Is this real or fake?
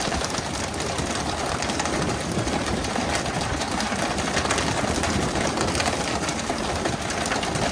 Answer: fake